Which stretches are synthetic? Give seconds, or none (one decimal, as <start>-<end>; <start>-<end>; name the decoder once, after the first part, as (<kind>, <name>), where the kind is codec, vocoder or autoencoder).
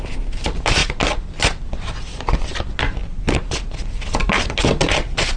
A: none